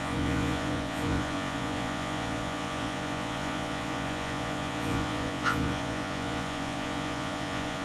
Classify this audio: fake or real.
fake